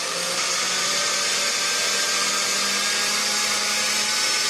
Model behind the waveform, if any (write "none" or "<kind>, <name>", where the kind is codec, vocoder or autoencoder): none